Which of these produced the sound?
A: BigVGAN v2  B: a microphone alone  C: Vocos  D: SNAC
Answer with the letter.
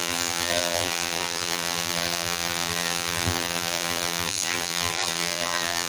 A